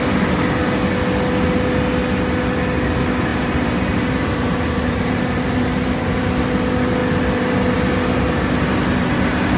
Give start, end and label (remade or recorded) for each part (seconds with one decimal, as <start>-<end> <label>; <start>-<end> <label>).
0.0-3.3 recorded; 3.3-6.3 remade; 6.3-9.6 recorded